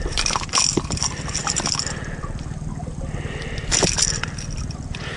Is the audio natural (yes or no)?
no